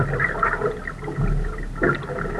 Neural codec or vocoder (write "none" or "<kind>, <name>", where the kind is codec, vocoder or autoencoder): none